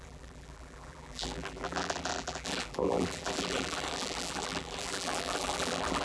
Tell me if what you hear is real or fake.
fake